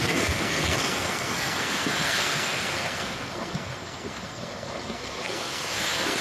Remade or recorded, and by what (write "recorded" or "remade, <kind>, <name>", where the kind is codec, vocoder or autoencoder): remade, codec, SNAC